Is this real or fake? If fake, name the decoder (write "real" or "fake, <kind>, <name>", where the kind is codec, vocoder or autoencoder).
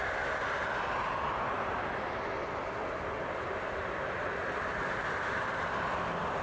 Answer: real